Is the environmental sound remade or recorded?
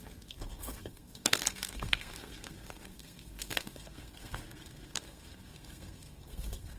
remade